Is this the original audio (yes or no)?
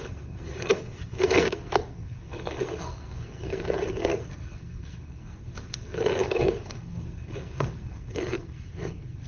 no